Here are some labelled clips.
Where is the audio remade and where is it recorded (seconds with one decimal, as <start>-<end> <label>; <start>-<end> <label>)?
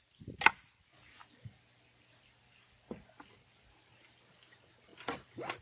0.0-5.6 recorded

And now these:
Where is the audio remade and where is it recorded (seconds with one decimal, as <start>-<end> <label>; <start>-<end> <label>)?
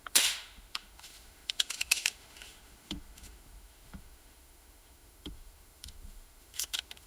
0.0-7.1 remade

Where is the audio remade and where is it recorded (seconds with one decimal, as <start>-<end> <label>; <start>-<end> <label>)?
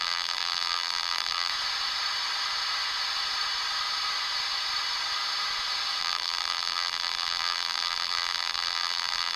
0.0-1.5 remade; 1.5-6.0 recorded; 6.0-9.4 remade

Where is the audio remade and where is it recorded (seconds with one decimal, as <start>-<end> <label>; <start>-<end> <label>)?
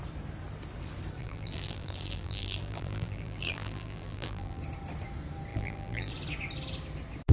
0.0-1.2 recorded; 1.2-4.6 remade; 4.6-5.5 recorded; 5.5-6.1 remade; 6.1-7.3 recorded